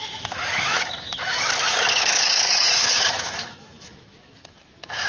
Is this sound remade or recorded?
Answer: remade